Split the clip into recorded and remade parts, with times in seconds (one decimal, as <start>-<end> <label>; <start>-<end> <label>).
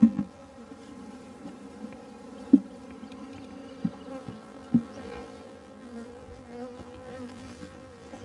0.0-0.5 remade; 0.5-4.2 recorded; 4.2-8.2 remade